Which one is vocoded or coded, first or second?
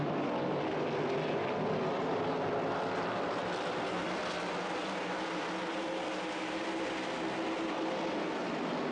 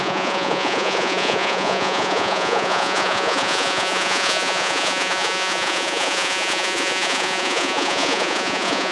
second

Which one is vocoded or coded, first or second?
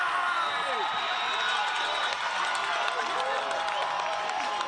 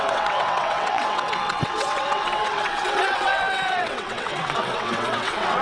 second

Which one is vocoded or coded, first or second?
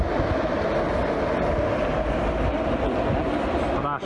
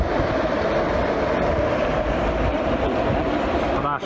second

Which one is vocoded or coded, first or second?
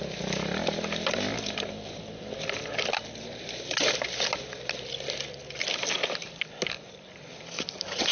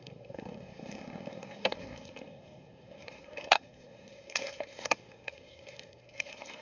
second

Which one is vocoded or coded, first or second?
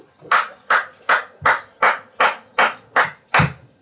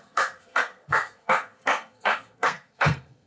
second